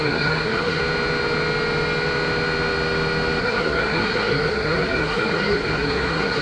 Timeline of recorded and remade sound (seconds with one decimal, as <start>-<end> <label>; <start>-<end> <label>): 0.0-0.8 remade; 0.8-3.4 recorded; 3.4-6.4 remade